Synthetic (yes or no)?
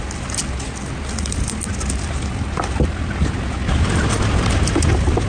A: no